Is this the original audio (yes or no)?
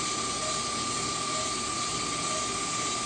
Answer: yes